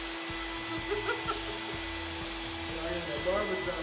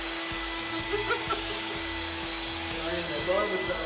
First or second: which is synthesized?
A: second